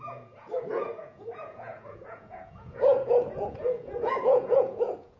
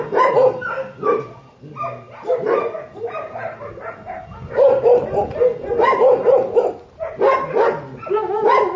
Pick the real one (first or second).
second